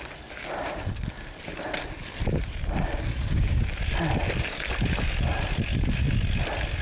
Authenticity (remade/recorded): recorded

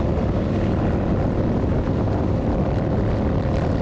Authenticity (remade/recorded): recorded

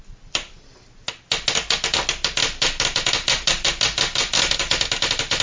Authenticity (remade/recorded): recorded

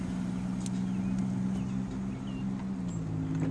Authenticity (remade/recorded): recorded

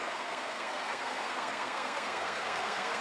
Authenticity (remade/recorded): remade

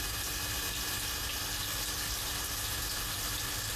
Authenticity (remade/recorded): recorded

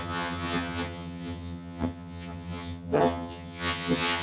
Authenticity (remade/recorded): remade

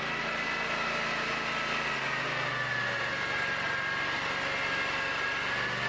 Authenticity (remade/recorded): recorded